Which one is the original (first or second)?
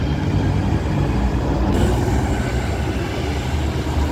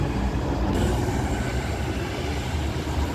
first